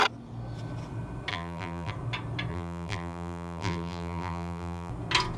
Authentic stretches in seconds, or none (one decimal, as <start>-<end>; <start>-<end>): 0.0-1.3; 1.9-2.5; 4.9-5.4